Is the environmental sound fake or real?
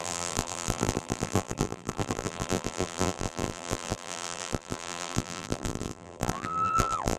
fake